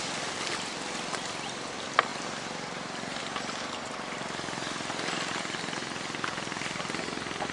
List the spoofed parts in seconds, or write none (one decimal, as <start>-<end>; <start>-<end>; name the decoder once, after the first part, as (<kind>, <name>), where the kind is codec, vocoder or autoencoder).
none